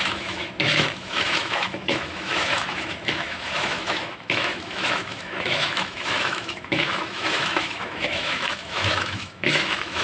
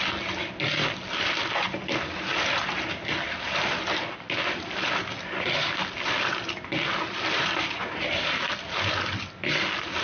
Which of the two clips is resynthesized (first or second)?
first